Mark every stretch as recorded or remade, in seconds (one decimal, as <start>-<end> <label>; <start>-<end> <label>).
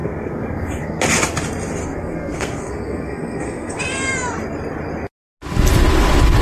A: 0.0-1.0 remade; 1.0-1.8 recorded; 1.8-3.8 remade; 3.8-6.4 recorded